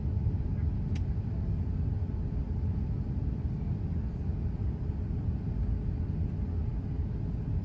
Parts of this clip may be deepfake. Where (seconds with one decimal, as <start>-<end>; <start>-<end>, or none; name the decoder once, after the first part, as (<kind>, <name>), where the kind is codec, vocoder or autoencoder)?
none